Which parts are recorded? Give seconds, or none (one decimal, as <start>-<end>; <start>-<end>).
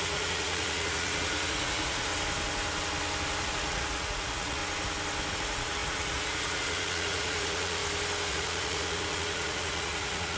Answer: 2.1-3.4; 4.6-5.3; 7.8-8.3